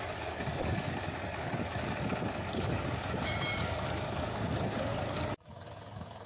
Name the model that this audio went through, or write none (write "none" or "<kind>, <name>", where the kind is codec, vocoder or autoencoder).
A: codec, DAC